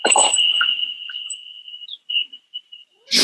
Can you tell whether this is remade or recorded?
recorded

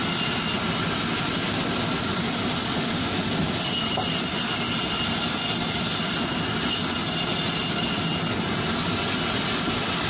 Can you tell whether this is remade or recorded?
recorded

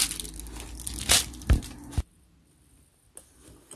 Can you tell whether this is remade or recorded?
recorded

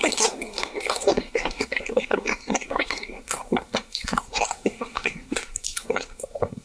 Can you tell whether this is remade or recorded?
remade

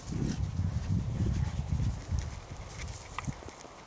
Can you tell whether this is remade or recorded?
recorded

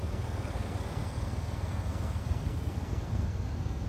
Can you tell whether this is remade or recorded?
remade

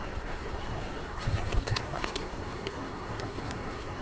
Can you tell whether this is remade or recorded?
remade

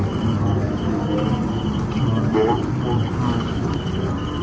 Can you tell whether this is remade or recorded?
recorded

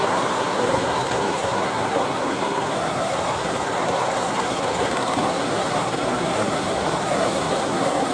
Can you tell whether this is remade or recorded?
remade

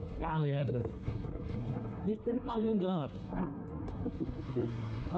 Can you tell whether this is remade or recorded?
remade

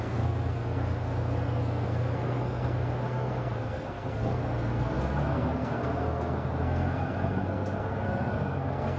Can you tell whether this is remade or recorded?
remade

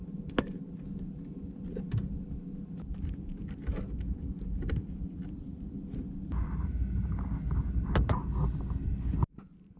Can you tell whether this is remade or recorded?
recorded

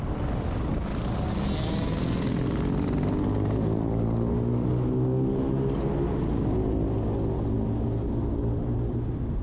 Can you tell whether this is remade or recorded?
recorded